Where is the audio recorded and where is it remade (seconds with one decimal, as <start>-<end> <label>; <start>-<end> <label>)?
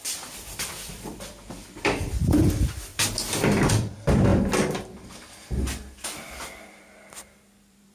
0.0-2.9 remade; 2.9-3.7 recorded; 3.7-4.3 remade; 4.3-7.3 recorded; 7.3-7.9 remade